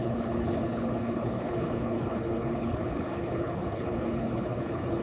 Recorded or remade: remade